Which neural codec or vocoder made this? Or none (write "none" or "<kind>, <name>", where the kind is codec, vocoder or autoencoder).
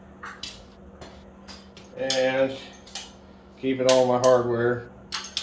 none